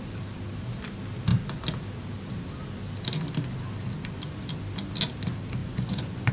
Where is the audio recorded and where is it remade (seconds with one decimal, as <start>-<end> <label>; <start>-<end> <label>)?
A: 0.0-5.6 recorded; 5.6-6.3 remade